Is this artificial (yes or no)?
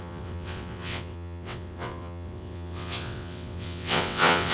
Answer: yes